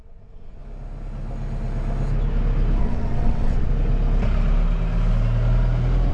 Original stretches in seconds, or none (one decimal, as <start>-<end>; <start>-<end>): 0.6-2.8; 3.7-6.1